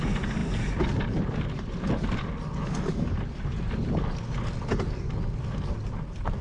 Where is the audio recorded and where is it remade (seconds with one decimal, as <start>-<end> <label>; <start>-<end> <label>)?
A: 0.0-6.4 recorded

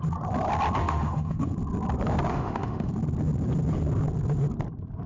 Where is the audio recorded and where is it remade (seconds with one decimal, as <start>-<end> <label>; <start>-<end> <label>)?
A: 0.0-0.8 recorded; 0.8-1.5 remade; 1.5-2.3 recorded; 2.3-2.9 remade; 2.9-5.1 recorded

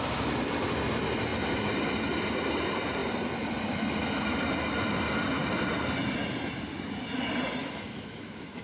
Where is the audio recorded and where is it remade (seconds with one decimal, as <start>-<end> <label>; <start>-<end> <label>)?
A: 0.0-7.6 recorded; 7.6-8.6 remade

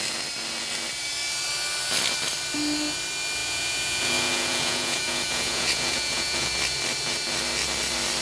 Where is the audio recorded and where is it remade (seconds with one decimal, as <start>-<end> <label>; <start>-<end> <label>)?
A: 0.0-3.4 recorded; 3.4-6.5 remade; 6.5-8.2 recorded

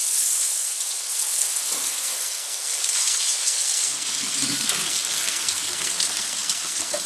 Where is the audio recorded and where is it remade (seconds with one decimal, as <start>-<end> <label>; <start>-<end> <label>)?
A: 0.0-7.1 remade

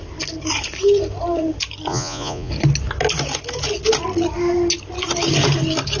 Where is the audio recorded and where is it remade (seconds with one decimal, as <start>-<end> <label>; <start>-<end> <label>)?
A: 0.0-1.9 recorded; 1.9-2.5 remade; 2.5-6.0 recorded